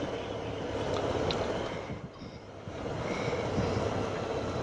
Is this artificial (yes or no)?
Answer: no